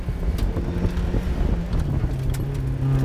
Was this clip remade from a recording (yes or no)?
no